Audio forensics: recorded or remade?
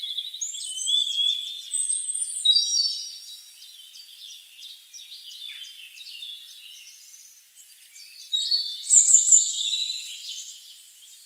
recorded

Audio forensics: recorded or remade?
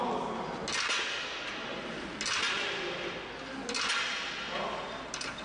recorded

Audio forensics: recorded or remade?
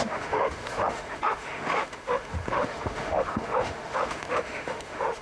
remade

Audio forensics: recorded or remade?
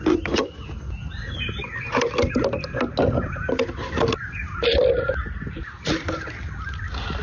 recorded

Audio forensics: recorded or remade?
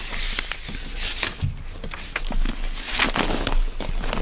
recorded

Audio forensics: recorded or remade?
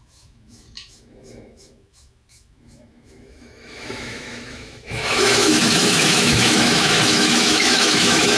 remade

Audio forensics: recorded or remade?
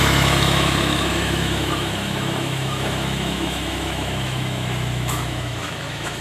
remade